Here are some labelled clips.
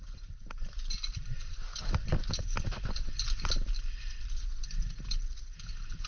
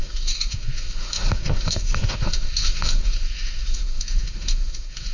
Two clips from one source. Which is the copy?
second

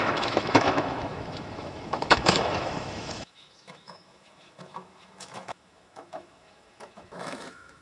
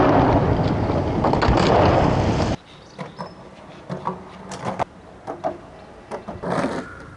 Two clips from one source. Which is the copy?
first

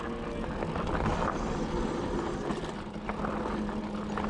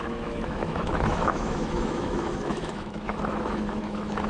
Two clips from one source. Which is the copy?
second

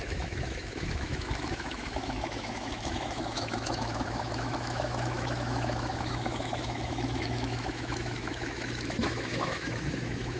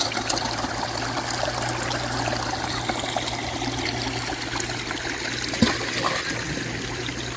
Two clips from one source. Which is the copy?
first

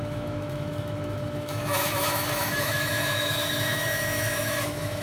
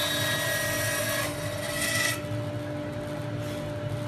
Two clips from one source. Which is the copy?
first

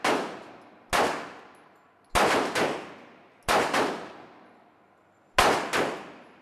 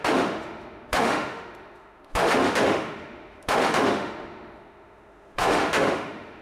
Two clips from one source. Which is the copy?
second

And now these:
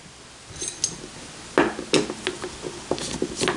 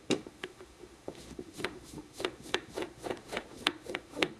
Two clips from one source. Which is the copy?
second